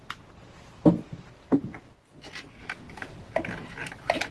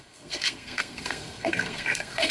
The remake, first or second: second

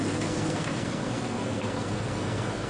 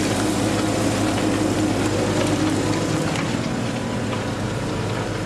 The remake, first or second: first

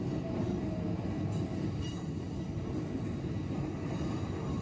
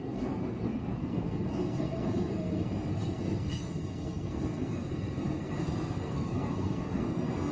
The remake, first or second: second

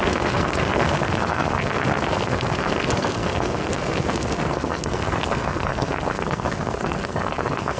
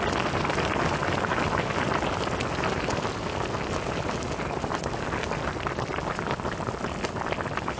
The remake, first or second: first